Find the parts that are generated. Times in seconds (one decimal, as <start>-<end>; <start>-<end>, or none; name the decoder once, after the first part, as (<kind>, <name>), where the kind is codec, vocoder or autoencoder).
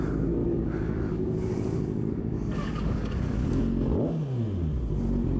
0.4-3.6 (codec, DAC)